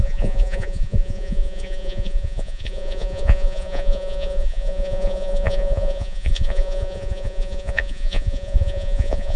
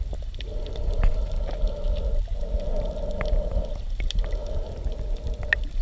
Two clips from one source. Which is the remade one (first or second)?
first